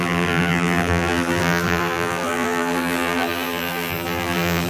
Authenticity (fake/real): fake